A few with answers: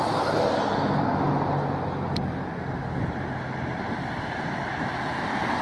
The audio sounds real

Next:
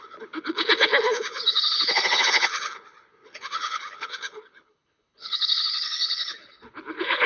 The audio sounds fake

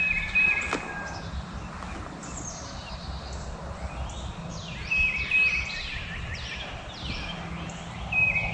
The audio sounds real